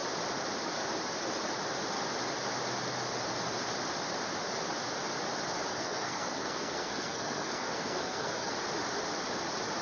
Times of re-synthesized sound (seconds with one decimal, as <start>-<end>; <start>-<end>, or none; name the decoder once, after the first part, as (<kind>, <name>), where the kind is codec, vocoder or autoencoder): 5.7-8.5 (codec, SNAC)